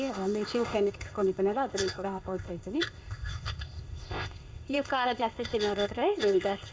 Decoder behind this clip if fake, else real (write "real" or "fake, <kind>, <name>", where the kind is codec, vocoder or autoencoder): fake, codec, ZipCodec